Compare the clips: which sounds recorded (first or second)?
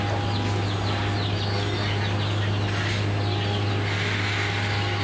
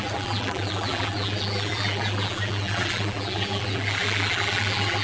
first